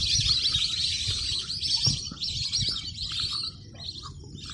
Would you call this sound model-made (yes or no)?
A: no